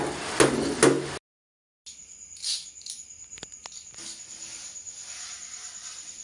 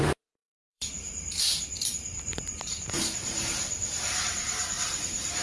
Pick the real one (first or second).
first